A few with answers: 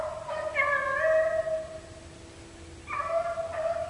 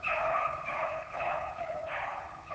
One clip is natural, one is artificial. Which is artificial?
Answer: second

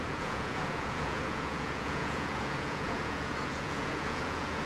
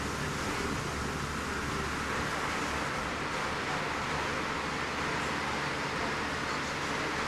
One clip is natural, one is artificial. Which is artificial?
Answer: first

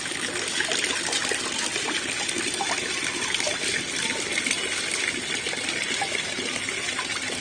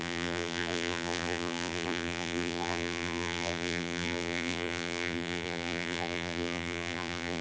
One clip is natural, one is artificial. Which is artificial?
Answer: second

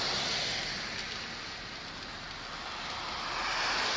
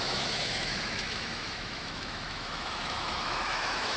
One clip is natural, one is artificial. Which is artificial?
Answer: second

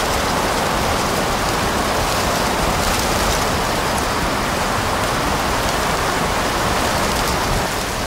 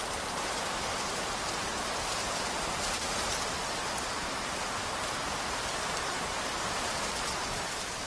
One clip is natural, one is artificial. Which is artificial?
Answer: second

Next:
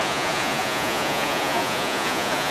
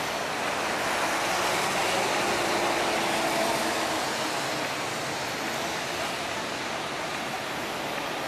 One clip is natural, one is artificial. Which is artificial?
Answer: first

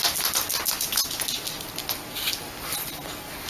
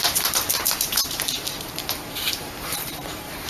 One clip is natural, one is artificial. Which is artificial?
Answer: second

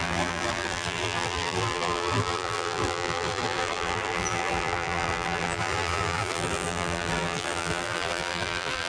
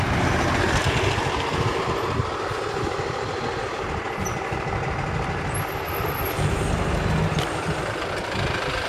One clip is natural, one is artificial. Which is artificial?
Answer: first